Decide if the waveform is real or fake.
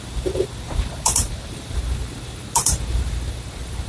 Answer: fake